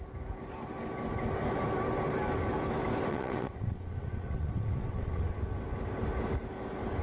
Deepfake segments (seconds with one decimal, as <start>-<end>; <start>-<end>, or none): 3.1-5.4